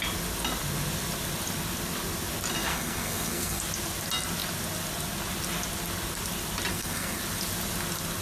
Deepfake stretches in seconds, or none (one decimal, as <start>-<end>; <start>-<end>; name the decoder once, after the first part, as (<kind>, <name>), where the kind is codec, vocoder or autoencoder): 2.6-3.6 (codec, SNAC); 6.7-7.2